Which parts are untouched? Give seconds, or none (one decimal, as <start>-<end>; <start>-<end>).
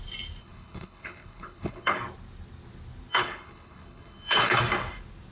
0.0-0.4; 2.0-3.1; 4.6-5.3